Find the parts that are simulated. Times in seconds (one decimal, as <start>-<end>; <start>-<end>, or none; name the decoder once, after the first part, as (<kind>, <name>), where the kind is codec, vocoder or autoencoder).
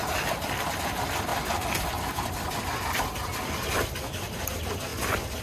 none